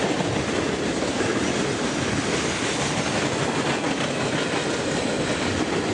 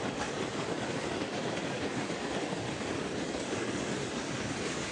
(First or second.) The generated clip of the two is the second